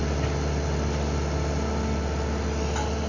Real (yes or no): yes